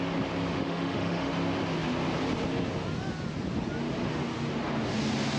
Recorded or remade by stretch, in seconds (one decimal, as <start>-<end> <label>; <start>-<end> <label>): 0.0-0.5 recorded; 0.5-1.3 remade; 1.3-5.4 recorded

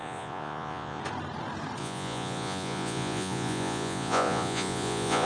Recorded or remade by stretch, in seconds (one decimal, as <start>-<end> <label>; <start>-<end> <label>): 0.0-1.0 remade; 1.0-1.8 recorded; 1.8-5.3 remade

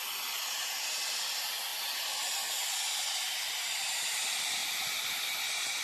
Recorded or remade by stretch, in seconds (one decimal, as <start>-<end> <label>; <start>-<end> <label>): 0.0-5.8 recorded